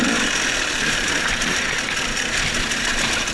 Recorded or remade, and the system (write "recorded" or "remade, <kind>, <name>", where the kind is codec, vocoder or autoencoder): recorded